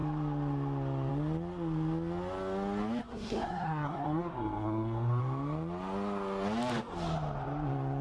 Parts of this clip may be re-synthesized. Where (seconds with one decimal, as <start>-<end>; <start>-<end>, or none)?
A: 3.0-5.2